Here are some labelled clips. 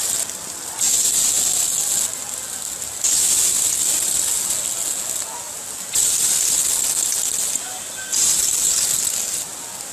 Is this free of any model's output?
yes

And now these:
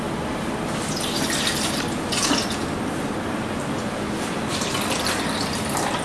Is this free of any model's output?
yes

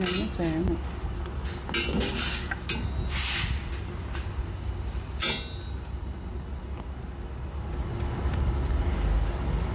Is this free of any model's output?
yes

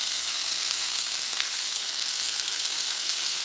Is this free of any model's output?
no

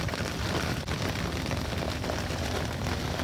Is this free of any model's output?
no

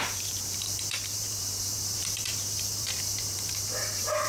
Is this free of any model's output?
no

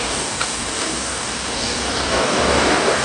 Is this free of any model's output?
no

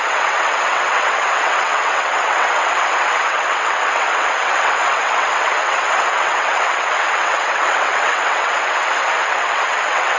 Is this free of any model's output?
no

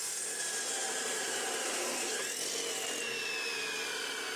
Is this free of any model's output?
yes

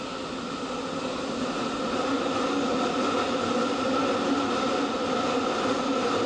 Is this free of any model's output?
yes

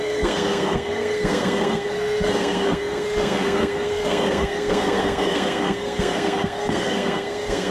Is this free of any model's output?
no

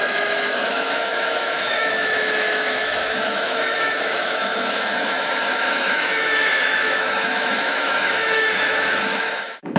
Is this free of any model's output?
no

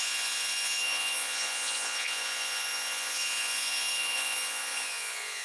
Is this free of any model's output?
no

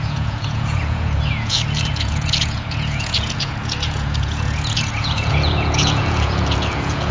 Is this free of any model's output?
no